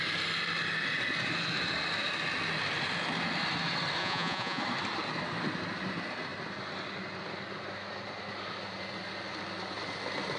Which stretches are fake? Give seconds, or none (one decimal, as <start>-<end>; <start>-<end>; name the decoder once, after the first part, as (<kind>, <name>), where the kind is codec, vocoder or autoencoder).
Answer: 4.0-4.6 (vocoder, Vocos)